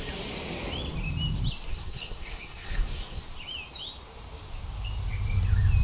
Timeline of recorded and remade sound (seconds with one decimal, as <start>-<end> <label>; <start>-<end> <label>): 0.0-1.7 recorded; 1.7-3.2 remade; 3.2-5.8 recorded